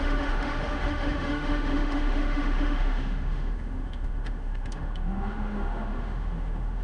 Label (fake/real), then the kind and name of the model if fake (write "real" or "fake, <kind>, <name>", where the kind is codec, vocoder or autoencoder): fake, autoencoder, DAC-VAE